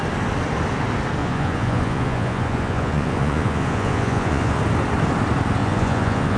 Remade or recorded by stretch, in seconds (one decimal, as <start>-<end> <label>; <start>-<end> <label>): 0.0-1.2 recorded; 1.2-4.6 remade; 4.6-5.6 recorded; 5.6-6.4 remade